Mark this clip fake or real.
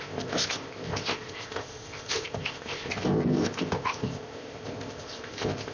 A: fake